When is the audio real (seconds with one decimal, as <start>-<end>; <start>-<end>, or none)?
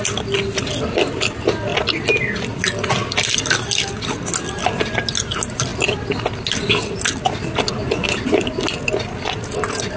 0.0-10.0